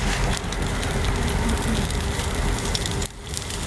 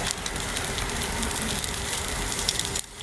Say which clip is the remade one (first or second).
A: second